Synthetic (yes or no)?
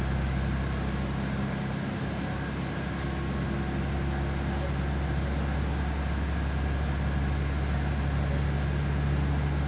no